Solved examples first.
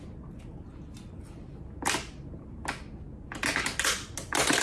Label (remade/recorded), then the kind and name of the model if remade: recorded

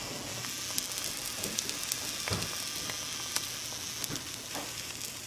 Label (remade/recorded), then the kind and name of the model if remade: recorded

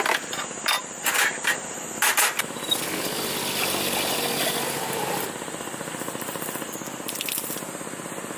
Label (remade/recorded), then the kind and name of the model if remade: recorded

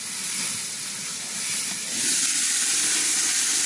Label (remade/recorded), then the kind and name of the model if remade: recorded